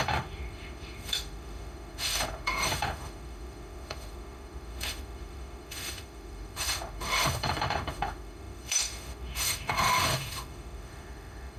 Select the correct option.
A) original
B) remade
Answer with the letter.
B